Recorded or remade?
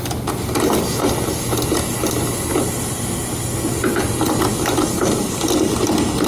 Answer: recorded